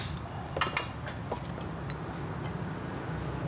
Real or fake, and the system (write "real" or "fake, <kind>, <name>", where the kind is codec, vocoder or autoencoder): real